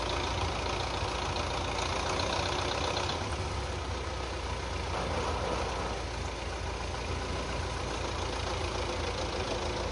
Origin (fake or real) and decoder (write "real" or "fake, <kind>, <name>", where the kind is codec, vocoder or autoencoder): real